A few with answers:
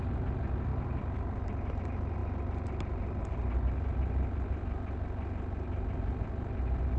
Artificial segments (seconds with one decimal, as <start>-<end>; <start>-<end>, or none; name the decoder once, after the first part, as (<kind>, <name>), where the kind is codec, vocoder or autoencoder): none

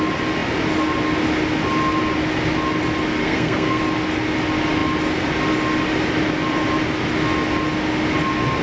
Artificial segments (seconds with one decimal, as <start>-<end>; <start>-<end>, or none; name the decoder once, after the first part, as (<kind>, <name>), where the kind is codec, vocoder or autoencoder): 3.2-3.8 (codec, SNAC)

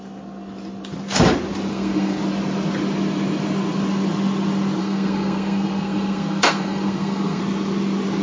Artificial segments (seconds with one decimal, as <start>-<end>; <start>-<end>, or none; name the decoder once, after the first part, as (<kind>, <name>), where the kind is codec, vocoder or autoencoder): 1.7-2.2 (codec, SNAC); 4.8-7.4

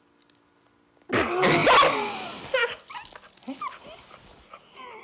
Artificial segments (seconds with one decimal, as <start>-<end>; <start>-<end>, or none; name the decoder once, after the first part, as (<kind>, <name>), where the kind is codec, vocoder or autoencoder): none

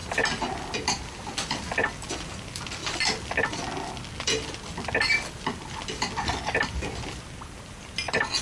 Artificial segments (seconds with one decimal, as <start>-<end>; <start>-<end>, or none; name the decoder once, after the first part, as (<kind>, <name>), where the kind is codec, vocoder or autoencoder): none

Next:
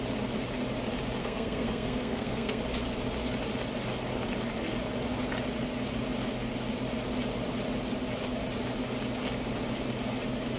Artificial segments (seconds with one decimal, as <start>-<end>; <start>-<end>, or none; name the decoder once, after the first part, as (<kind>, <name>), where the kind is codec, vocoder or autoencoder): 1.2-2.6 (codec, SNAC)

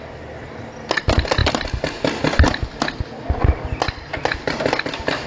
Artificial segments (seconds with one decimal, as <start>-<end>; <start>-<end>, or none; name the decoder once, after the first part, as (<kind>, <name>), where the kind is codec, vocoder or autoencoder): none